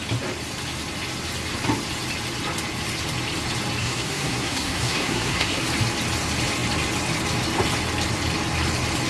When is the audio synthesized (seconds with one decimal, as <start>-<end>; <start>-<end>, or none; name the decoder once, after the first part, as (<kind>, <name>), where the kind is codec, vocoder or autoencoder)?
3.8-5.6 (codec, SNAC)